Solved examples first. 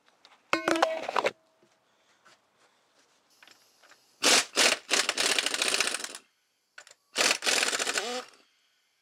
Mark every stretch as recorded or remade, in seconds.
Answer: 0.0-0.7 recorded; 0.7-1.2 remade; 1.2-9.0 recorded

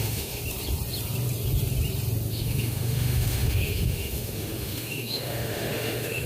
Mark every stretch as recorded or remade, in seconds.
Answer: 0.0-0.4 remade; 0.4-2.3 recorded; 2.3-6.3 remade

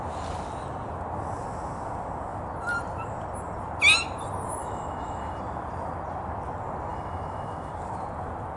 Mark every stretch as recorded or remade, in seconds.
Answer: 0.0-4.6 recorded; 4.6-5.4 remade; 5.4-6.9 recorded; 6.9-7.7 remade; 7.7-8.6 recorded

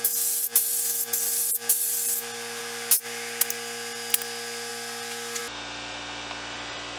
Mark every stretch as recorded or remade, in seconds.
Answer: 0.0-7.0 recorded

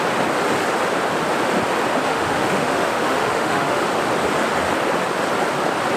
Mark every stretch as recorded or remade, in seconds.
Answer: 0.0-2.1 recorded; 2.1-3.8 remade; 3.8-6.0 recorded